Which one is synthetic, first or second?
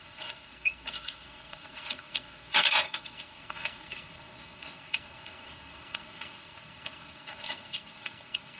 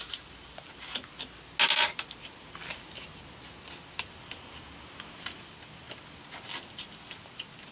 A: first